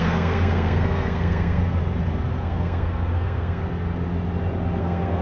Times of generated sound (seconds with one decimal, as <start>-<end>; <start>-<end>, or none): 0.0-1.6; 2.4-3.6; 4.8-5.2